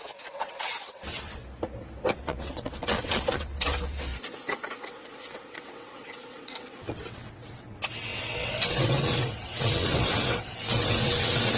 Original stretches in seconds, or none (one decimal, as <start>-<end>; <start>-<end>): 1.4-2.1; 4.1-4.8